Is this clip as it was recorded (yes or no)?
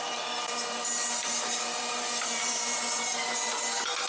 no